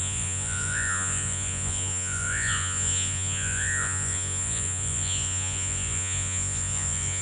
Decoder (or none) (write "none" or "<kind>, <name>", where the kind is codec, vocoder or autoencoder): vocoder, Vocos